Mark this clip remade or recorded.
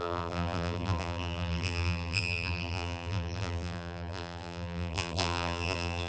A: remade